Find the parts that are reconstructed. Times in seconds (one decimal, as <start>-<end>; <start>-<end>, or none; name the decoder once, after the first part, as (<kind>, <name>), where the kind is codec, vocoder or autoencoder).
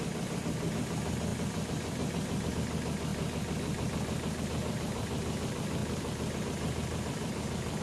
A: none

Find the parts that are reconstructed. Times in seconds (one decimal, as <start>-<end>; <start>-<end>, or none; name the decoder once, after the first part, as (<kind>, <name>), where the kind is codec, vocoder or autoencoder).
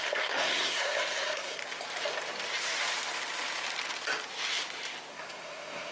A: 0.0-1.6 (codec, SNAC); 5.1-5.9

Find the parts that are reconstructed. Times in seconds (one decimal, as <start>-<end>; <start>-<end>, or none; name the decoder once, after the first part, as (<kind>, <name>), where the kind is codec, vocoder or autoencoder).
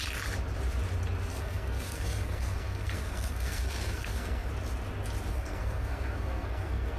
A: 1.3-4.5 (codec, SNAC); 5.3-7.0